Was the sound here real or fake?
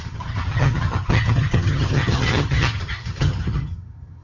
fake